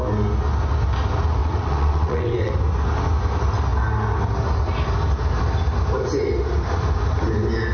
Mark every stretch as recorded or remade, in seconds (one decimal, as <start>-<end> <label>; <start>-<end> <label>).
0.0-1.4 recorded; 1.4-2.5 remade; 2.5-7.7 recorded

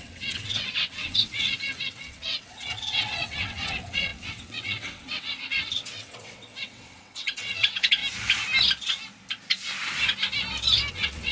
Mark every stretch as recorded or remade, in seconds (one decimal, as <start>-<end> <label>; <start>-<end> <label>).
0.0-8.0 remade; 8.0-10.9 recorded; 10.9-11.3 remade

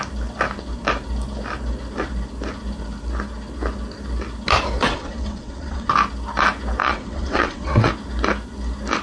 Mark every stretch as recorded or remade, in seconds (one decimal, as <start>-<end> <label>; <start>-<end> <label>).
0.0-4.8 recorded; 4.8-5.9 remade; 5.9-6.8 recorded; 6.8-7.9 remade; 7.9-9.0 recorded

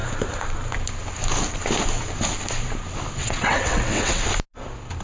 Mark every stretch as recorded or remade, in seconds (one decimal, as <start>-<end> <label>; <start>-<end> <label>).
0.0-3.2 recorded; 3.2-4.2 remade; 4.2-5.0 recorded

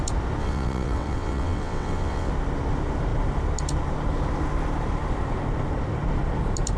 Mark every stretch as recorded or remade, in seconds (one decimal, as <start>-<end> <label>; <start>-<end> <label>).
0.0-0.4 recorded; 0.4-2.3 remade; 2.3-6.8 recorded

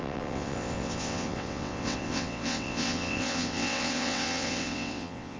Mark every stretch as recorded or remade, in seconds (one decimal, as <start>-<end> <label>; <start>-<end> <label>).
0.0-5.4 remade